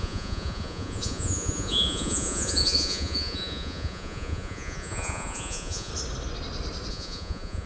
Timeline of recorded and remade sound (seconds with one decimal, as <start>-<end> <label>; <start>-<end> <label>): 0.0-5.9 remade; 5.9-6.9 recorded; 6.9-7.7 remade